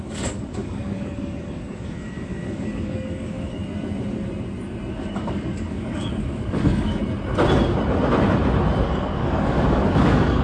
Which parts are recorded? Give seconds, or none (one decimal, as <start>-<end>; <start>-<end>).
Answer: 3.6-4.9; 7.0-8.9

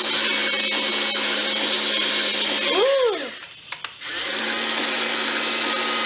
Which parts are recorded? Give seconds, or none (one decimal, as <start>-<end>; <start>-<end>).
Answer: 0.0-6.1

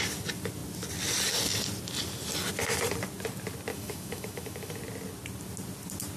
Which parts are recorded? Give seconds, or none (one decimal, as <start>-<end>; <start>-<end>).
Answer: 0.0-3.7; 4.8-6.2

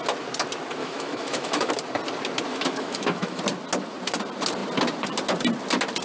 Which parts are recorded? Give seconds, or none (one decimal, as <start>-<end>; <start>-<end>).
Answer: 0.0-0.8; 1.7-2.5; 3.4-6.0

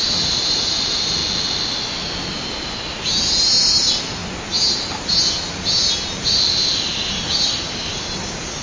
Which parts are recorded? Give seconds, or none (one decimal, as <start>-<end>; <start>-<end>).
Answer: 1.2-2.2; 3.1-3.8; 4.2-4.7

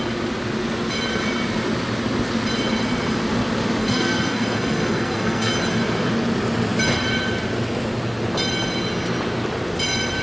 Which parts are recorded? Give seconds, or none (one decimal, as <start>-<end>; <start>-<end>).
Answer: 0.0-3.8; 5.5-10.2

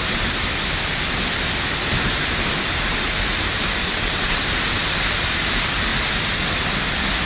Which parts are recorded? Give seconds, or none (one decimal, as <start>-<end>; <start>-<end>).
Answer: 0.0-3.8; 4.4-7.3

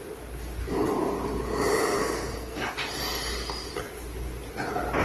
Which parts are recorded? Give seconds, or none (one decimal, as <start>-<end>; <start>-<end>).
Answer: 0.0-2.0; 2.6-5.0